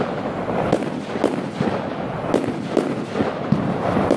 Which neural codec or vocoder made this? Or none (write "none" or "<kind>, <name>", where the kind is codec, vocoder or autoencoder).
none